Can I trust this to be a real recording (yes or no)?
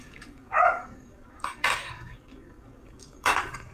no